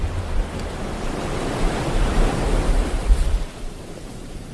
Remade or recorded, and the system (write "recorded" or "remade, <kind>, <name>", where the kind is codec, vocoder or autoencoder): recorded